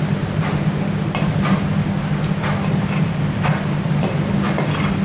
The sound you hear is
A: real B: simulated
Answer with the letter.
A